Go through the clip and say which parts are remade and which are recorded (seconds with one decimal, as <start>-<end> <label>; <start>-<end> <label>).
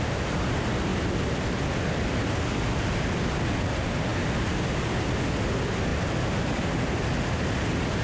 0.0-8.0 recorded